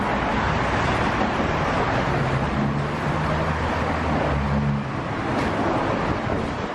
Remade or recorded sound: recorded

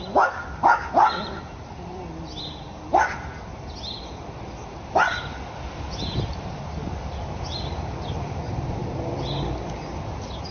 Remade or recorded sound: recorded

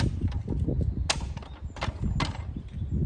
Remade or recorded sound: recorded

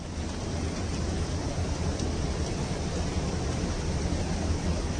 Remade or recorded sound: recorded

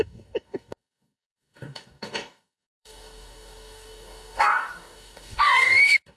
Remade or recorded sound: remade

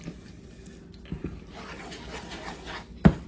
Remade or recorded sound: recorded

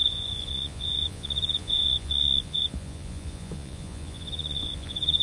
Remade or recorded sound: remade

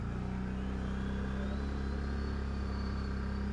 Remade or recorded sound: recorded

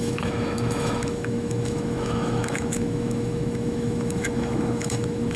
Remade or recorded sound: remade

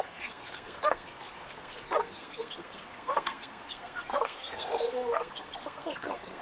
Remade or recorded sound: remade